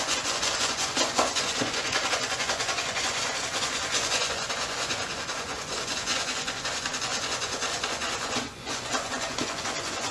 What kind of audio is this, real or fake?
fake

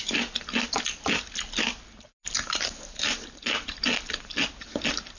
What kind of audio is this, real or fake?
real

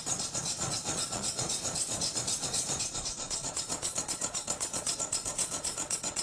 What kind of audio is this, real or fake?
fake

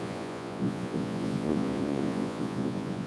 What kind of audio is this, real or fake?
fake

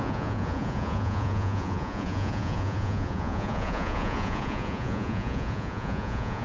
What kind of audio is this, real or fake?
fake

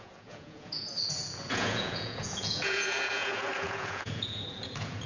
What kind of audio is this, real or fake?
fake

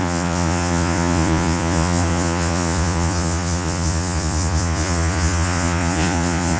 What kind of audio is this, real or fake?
fake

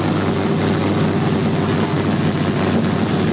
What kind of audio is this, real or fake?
real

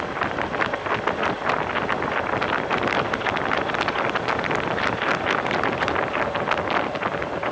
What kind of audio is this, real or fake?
real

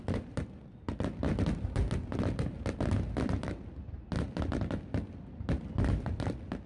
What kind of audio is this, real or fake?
real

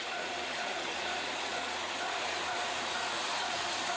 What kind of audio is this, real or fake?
fake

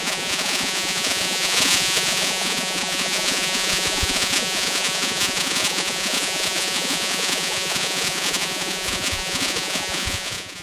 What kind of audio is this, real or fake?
fake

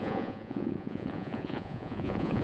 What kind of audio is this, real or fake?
fake